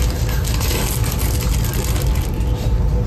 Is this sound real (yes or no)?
yes